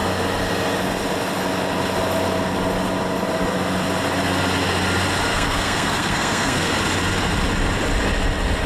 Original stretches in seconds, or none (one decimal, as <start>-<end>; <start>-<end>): 0.0-5.3; 6.7-8.7